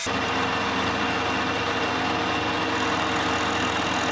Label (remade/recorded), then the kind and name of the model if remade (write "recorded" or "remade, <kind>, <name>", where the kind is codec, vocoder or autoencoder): recorded